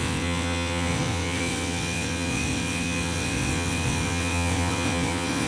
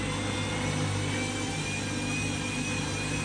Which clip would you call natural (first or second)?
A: second